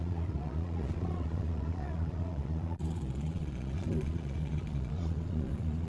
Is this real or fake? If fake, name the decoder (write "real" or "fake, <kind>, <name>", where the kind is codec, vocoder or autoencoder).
fake, vocoder, Vocos